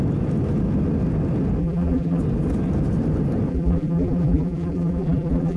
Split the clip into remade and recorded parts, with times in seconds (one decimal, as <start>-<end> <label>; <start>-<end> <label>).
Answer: 0.0-1.6 recorded; 1.6-2.2 remade; 2.2-3.5 recorded; 3.5-5.6 remade

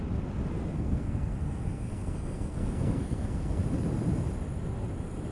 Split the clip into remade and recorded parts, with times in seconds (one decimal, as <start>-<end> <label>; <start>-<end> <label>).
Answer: 0.0-0.7 recorded; 0.7-3.6 remade; 3.6-5.3 recorded

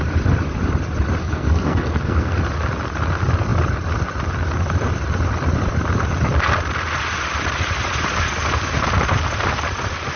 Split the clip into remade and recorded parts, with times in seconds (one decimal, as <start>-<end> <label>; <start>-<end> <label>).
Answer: 0.0-1.2 recorded; 1.2-2.4 remade; 2.4-10.2 recorded